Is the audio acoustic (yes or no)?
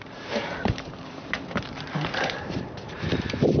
no